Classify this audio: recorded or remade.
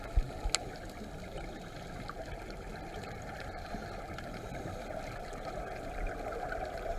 recorded